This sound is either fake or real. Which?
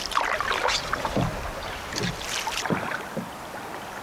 real